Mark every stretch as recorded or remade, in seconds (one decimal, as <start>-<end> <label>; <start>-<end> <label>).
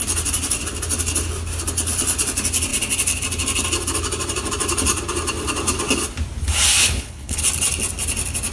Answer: 0.0-6.8 recorded; 6.8-7.4 remade; 7.4-8.5 recorded